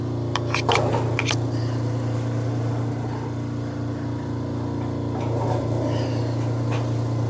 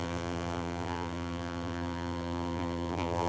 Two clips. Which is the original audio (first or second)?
first